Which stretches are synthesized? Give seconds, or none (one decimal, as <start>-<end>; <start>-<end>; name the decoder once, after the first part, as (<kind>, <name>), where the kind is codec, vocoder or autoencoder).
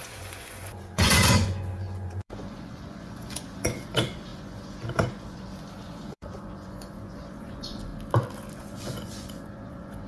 0.0-7.9 (vocoder, Vocos); 8.6-10.1